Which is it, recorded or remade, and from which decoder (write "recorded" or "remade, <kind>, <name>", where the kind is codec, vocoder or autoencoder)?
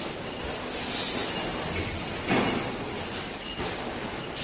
recorded